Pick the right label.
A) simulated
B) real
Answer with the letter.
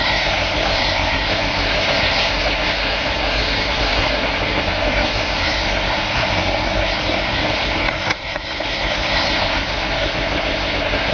A